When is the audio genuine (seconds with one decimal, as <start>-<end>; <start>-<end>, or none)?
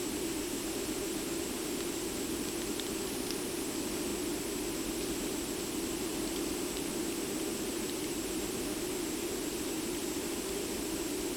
0.0-6.1; 6.9-10.0; 10.6-11.4